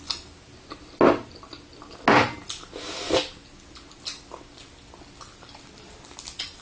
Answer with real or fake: real